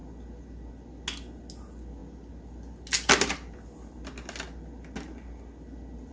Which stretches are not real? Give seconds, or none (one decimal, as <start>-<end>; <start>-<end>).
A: none